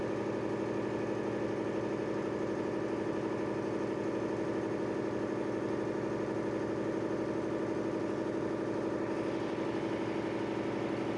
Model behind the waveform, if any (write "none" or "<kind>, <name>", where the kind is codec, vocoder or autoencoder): none